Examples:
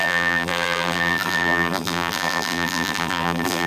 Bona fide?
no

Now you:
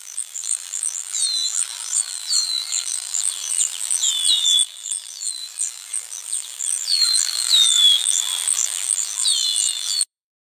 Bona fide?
no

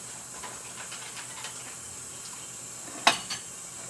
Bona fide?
yes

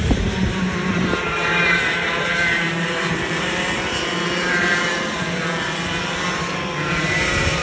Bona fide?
no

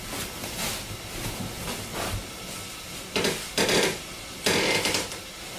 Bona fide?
yes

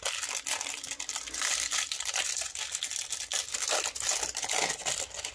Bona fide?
yes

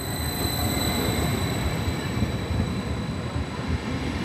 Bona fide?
no